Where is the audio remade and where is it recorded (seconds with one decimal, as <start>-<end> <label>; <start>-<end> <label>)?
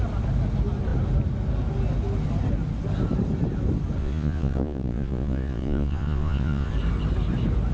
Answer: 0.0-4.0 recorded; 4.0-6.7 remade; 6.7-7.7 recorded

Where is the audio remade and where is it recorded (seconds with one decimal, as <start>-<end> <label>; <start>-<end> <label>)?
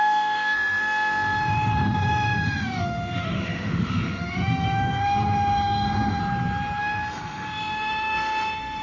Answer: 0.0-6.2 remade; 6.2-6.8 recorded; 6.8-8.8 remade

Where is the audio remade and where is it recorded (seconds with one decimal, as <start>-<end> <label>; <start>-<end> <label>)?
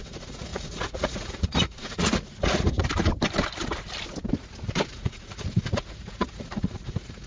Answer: 0.0-2.8 remade; 2.8-4.9 recorded; 4.9-7.3 remade